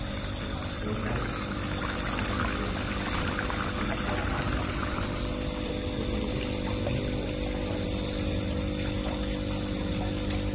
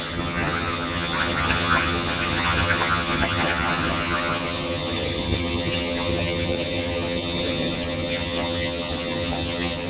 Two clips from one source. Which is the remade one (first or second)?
second